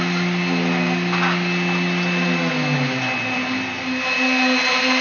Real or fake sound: real